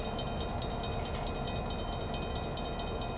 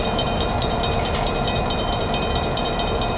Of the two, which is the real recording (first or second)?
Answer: first